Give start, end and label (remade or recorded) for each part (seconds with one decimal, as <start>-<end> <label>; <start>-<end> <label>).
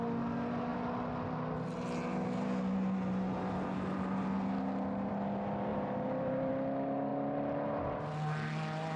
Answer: 0.0-5.7 recorded; 5.7-6.5 remade; 6.5-9.0 recorded